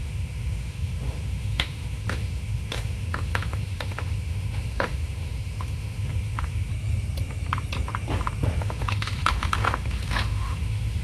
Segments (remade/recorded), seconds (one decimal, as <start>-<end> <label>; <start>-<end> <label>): 0.0-6.7 remade; 6.7-8.6 recorded; 8.6-11.0 remade